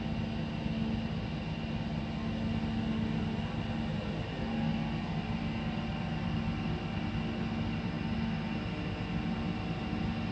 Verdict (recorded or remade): recorded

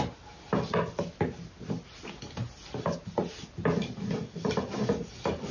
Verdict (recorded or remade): recorded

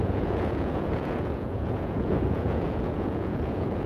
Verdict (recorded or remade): remade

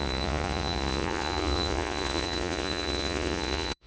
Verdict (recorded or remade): remade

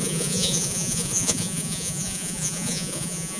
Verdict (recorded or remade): remade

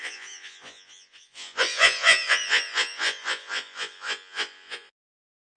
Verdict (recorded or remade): remade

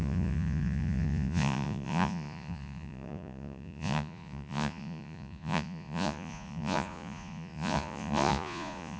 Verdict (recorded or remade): remade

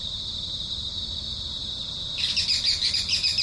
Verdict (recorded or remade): recorded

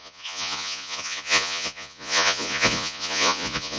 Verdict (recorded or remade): remade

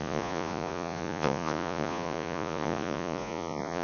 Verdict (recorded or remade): remade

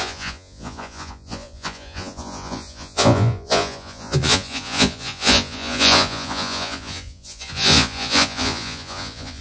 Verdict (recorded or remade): remade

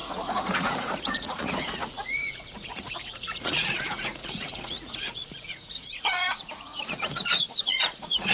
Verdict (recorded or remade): remade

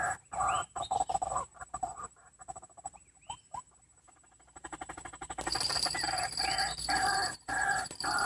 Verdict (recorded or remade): recorded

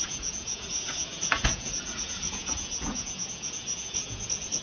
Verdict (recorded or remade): remade